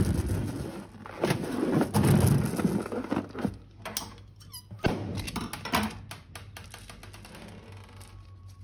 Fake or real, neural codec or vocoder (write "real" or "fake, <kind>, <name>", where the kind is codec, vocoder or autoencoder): real